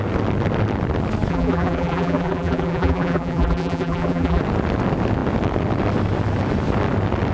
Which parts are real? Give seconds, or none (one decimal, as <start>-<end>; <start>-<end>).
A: 0.0-1.3; 4.4-7.3